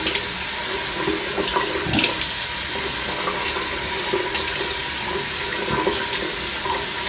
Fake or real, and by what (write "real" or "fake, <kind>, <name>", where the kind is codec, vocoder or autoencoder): real